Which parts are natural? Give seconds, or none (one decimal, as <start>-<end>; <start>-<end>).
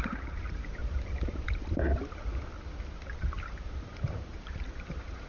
0.8-3.8